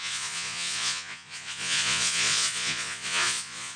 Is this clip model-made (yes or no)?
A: yes